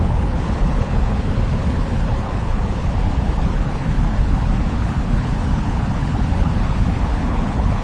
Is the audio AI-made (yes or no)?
yes